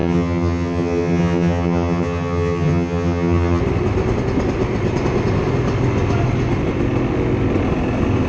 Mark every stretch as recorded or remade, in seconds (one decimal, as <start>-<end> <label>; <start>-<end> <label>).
0.0-3.6 remade; 3.6-8.3 recorded